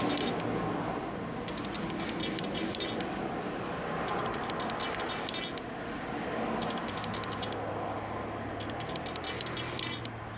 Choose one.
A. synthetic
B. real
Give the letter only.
B